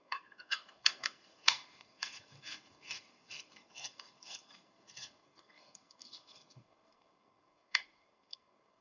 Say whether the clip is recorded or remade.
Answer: remade